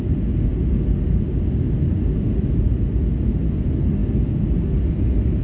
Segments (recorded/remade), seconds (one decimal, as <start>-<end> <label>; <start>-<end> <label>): 0.0-5.4 recorded